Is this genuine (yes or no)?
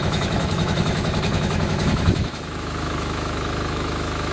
no